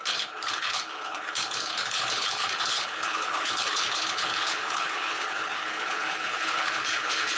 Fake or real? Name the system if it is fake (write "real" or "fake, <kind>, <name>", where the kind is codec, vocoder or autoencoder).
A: fake, codec, HILCodec